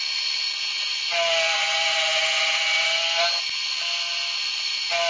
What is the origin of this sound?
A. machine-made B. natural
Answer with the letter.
B